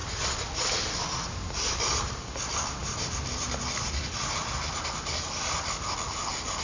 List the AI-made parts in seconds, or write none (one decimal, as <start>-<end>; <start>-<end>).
2.8-4.0